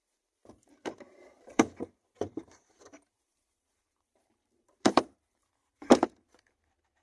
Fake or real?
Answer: fake